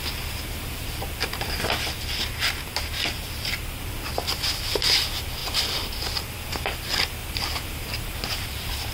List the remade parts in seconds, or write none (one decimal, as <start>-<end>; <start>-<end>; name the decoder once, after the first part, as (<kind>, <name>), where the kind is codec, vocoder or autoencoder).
5.4-6.0 (vocoder, BigVGAN v2); 7.2-8.9